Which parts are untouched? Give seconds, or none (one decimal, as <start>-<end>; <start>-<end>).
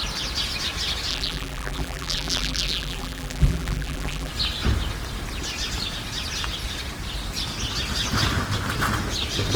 0.0-1.1; 4.3-9.6